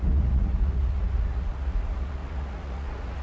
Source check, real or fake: fake